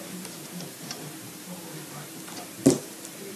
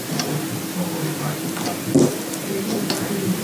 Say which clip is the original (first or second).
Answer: second